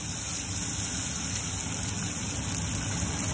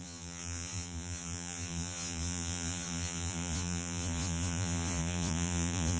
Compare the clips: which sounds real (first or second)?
first